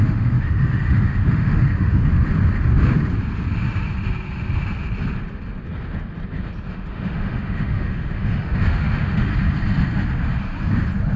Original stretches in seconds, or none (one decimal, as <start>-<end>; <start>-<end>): 2.1-6.7; 9.3-11.2